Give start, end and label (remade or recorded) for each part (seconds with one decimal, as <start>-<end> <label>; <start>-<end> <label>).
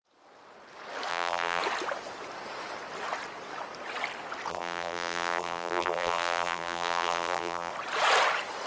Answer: 0.0-1.1 recorded; 1.1-1.6 remade; 1.6-4.5 recorded; 4.5-7.7 remade; 7.7-8.7 recorded